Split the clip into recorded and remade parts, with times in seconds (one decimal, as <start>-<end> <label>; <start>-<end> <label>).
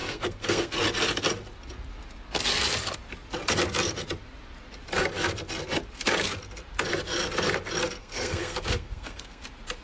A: 0.0-0.7 remade; 0.7-8.0 recorded; 8.0-9.4 remade; 9.4-9.8 recorded